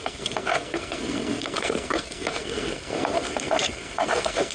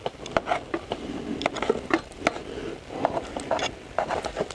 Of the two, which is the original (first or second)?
second